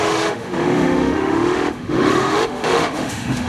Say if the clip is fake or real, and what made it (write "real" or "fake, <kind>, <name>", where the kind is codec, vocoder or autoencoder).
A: fake, autoencoder, DAC-VAE